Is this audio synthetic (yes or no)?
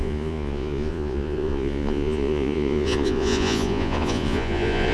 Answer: yes